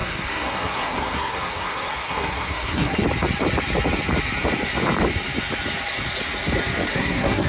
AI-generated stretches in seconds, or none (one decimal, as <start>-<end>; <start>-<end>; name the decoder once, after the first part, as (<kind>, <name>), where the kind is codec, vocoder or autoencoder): 0.0-3.0 (codec, SNAC); 6.9-7.5